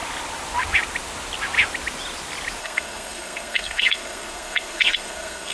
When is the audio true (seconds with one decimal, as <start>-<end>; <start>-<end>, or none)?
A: 0.0-2.6